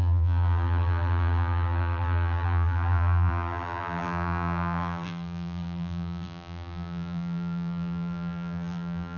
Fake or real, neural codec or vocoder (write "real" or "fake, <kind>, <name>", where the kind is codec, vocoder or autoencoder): fake, vocoder, BigVGAN v2